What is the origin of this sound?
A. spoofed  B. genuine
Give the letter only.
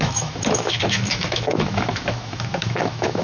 A